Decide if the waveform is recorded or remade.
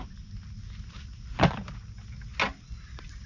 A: recorded